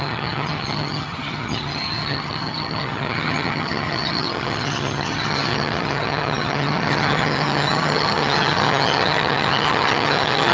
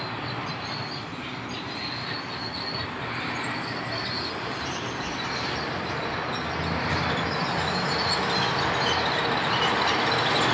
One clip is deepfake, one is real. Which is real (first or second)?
second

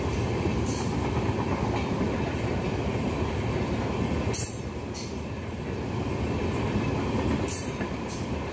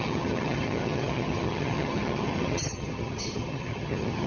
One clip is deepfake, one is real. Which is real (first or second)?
first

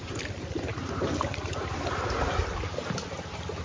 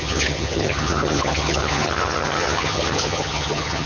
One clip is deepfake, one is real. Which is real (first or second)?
first